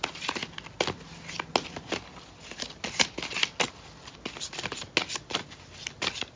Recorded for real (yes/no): yes